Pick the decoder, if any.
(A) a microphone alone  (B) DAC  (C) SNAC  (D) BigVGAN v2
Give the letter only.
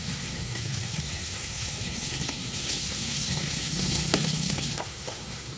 C